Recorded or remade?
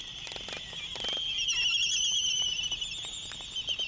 recorded